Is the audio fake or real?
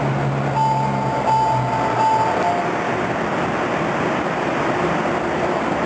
real